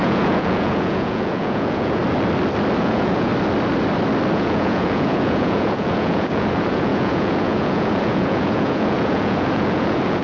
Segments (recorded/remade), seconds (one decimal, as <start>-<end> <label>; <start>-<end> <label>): 0.0-2.0 remade; 2.0-2.8 recorded; 2.8-3.3 remade; 3.3-4.3 recorded; 4.3-10.2 remade